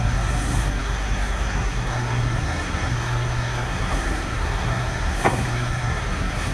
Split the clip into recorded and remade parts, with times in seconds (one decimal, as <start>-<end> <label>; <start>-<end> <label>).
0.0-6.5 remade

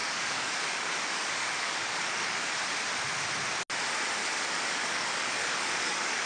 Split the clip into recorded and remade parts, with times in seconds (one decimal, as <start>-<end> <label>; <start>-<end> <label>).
0.0-2.5 remade; 2.5-4.2 recorded; 4.2-6.3 remade

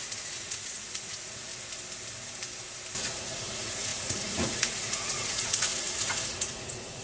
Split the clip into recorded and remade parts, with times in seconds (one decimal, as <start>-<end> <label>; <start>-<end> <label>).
0.0-1.5 remade; 1.5-3.0 recorded; 3.0-7.0 remade